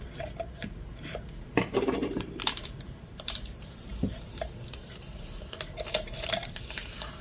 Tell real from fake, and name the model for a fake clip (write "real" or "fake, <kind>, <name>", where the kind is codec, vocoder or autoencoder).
fake, vocoder, BigVGAN v2